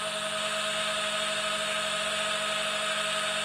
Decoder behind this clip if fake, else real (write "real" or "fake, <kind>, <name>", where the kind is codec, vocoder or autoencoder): real